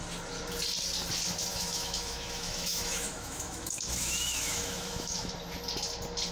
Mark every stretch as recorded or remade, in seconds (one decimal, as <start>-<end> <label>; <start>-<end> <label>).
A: 0.0-1.5 recorded; 1.5-5.3 remade; 5.3-6.3 recorded